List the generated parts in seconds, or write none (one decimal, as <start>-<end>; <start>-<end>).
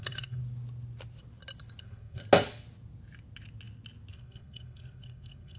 0.0-0.4; 1.8-2.2; 4.1-5.6